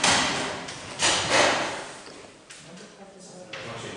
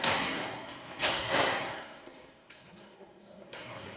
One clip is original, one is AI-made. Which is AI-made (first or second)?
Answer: second